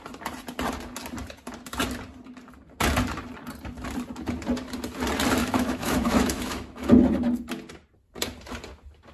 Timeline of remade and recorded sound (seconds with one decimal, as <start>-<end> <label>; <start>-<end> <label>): 0.0-5.4 recorded; 5.4-6.9 remade; 6.9-9.1 recorded